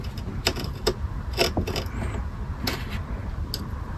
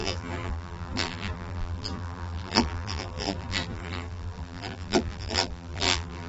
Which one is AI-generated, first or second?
second